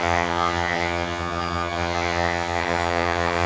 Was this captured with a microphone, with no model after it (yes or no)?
no